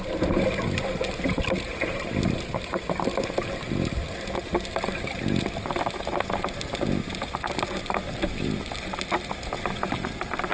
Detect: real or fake real